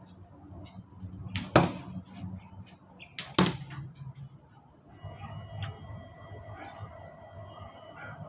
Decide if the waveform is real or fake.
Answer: real